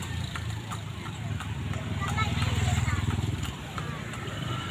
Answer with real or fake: fake